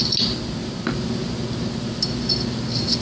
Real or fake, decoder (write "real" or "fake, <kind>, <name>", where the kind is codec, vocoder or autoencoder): real